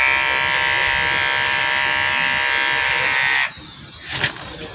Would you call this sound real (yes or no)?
yes